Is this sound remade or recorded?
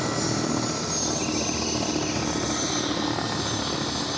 recorded